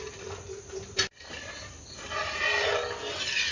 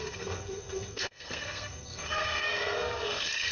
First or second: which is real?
first